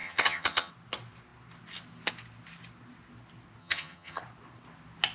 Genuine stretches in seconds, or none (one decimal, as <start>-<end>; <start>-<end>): 0.7-3.6; 4.2-5.1